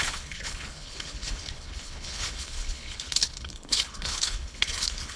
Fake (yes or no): yes